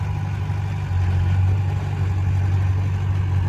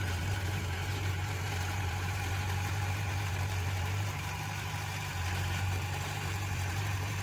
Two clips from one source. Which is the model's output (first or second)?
second